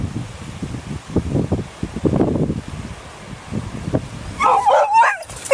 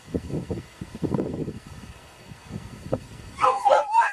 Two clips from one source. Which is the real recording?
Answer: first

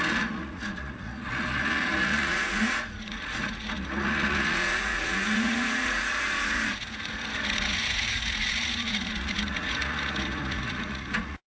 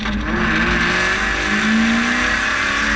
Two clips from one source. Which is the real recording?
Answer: second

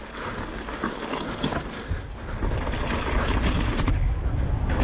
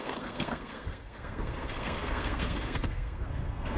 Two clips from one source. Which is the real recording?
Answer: first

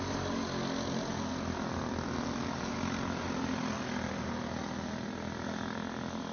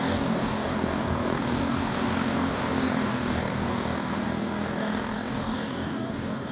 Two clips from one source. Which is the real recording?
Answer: first